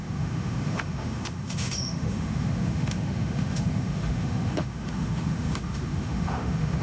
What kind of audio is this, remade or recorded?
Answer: remade